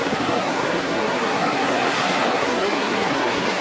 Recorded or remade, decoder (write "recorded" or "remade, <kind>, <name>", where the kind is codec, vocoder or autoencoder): remade, codec, SNAC